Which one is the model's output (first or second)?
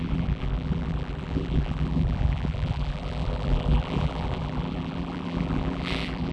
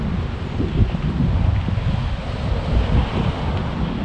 first